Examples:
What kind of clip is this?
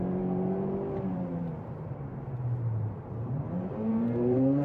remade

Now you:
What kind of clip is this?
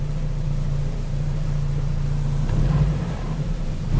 remade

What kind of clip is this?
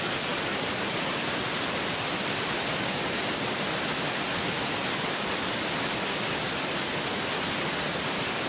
recorded